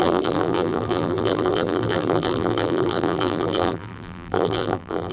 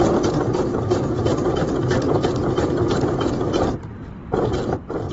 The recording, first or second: second